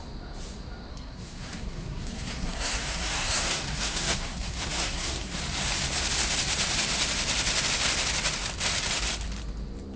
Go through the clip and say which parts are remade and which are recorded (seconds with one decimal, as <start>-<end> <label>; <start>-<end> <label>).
0.0-0.9 recorded; 0.9-5.4 remade; 5.4-10.0 recorded